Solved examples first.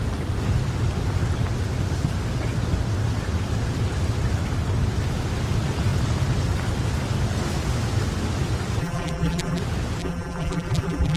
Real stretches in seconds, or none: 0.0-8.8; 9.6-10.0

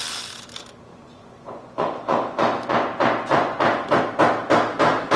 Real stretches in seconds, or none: 0.0-0.9; 4.0-5.2

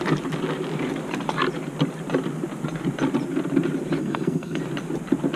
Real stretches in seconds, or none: 0.0-4.0; 4.6-5.4

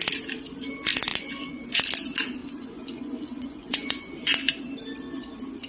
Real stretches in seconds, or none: 0.0-1.1; 1.8-2.4; 4.4-5.7

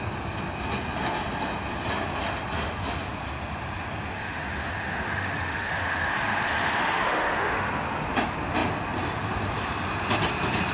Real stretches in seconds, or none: 0.0-4.1; 7.7-10.7